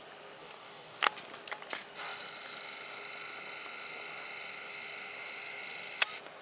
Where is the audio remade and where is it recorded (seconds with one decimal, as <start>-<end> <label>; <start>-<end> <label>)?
0.0-0.4 recorded; 0.4-1.0 remade; 1.0-6.4 recorded

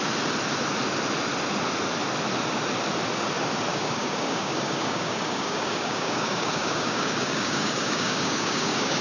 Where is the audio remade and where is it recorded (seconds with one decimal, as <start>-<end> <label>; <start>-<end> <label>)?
0.0-3.7 recorded; 3.7-9.0 remade

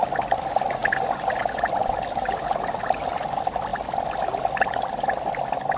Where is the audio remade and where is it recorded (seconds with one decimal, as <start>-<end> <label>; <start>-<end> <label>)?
0.0-5.8 recorded

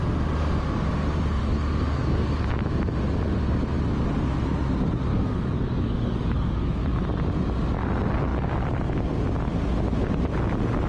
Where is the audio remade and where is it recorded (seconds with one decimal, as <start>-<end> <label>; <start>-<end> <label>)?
0.0-1.4 recorded; 1.4-2.5 remade; 2.5-5.1 recorded; 5.1-7.0 remade; 7.0-10.9 recorded

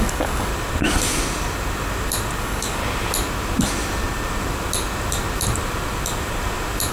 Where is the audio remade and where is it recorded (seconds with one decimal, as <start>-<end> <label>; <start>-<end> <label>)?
0.0-0.5 remade; 0.5-2.4 recorded; 2.4-2.8 remade; 2.8-6.9 recorded

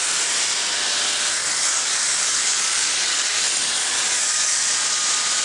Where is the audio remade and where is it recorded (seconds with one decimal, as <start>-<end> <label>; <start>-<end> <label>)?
0.0-1.4 recorded; 1.4-4.6 remade; 4.6-5.4 recorded